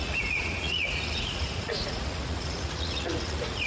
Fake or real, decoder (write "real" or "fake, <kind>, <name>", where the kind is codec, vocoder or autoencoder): fake, vocoder, Vocos